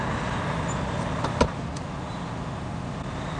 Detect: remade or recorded recorded